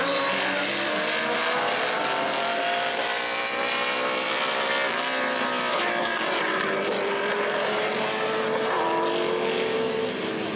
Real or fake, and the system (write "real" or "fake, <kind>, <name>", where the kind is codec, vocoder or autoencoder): real